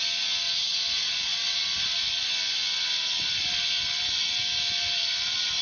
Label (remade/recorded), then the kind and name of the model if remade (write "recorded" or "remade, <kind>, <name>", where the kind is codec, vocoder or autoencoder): recorded